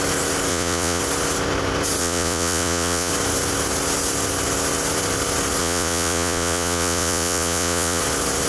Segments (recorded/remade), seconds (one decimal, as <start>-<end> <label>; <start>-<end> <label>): 0.0-0.5 recorded; 0.5-1.0 remade; 1.0-2.0 recorded; 2.0-3.1 remade; 3.1-5.6 recorded; 5.6-8.0 remade; 8.0-8.5 recorded